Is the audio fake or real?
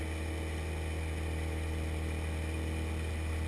real